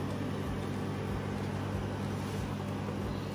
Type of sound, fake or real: real